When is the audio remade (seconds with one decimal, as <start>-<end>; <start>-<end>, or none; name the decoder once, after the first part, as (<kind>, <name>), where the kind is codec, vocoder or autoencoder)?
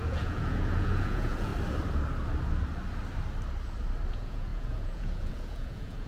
0.0-1.5 (vocoder, Vocos); 4.1-6.1